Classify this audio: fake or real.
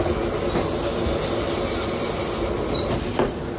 real